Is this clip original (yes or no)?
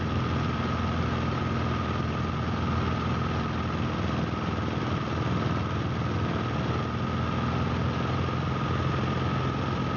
yes